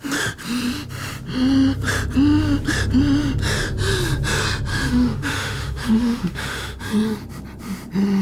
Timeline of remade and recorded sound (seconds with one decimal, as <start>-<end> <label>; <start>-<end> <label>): 0.0-4.7 recorded; 4.7-6.8 remade; 6.8-8.2 recorded